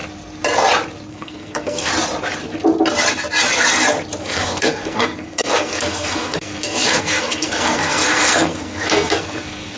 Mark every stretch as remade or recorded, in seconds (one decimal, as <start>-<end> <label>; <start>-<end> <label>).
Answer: 0.0-1.1 recorded; 1.1-1.9 remade; 1.9-4.2 recorded; 4.2-9.8 remade